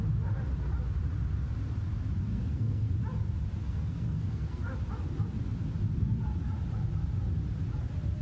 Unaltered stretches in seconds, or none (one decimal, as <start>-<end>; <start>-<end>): 0.0-2.3; 2.9-3.6; 4.6-8.2

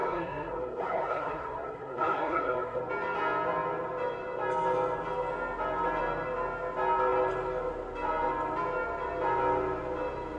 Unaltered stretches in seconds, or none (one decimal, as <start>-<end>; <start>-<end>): 2.8-10.4